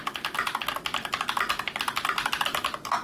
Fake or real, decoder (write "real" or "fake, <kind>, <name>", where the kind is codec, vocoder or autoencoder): real